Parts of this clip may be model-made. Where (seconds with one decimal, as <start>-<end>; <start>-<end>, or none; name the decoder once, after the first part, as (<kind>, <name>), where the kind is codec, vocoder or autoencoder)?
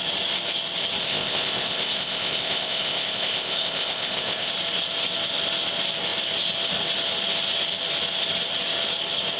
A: 1.0-4.5 (codec, ZipCodec)